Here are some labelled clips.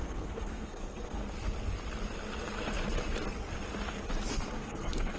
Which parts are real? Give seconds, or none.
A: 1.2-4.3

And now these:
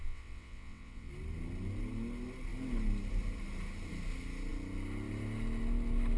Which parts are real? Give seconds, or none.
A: 1.1-6.2

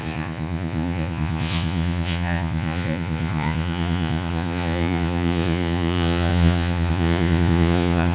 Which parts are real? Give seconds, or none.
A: none

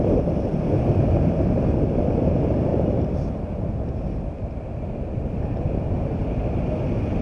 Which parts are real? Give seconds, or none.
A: 0.0-7.2

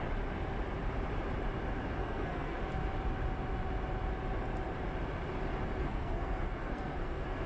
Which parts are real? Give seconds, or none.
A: 0.0-2.0; 2.6-5.8

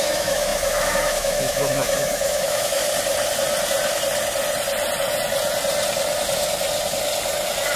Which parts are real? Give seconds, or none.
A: 2.8-7.8